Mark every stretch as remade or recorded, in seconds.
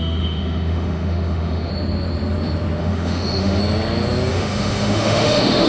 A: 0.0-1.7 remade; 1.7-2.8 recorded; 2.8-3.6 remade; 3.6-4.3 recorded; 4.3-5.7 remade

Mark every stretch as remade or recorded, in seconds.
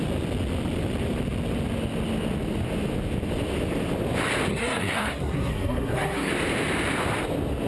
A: 0.0-4.5 recorded; 4.5-6.3 remade; 6.3-7.7 recorded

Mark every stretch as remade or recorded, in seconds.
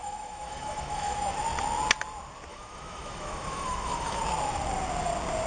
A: 0.0-1.2 remade; 1.2-2.5 recorded; 2.5-4.2 remade; 4.2-5.5 recorded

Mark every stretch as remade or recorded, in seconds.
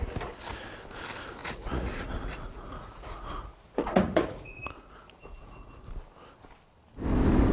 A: 0.0-1.4 recorded; 1.4-5.7 remade; 5.7-7.5 recorded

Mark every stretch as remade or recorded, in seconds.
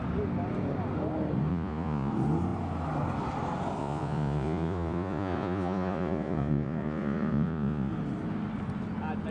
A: 0.0-1.5 recorded; 1.5-2.1 remade; 2.1-3.8 recorded; 3.8-7.9 remade; 7.9-9.3 recorded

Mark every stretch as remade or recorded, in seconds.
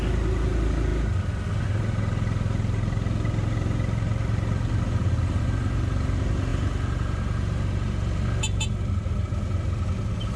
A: 0.0-10.4 recorded